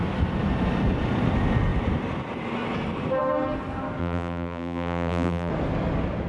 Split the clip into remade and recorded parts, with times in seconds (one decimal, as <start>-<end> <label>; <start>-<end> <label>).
0.0-4.0 recorded; 4.0-5.5 remade; 5.5-6.3 recorded